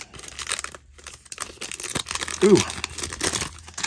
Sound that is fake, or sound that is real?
real